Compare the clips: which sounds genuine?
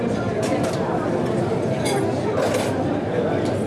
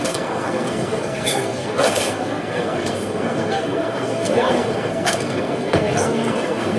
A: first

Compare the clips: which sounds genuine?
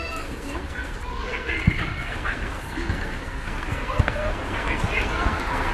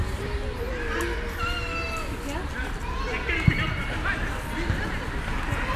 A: second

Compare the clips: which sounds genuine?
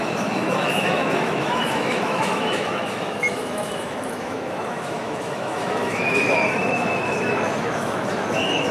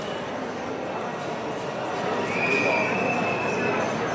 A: second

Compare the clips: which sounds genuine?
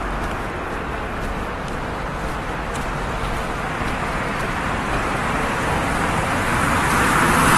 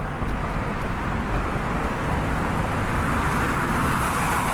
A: second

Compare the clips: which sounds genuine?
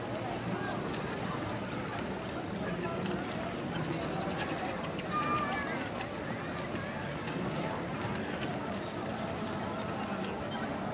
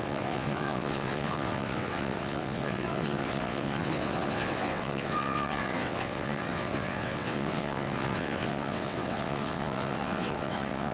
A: first